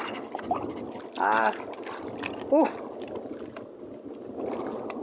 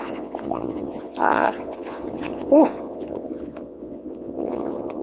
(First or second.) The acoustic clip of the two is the first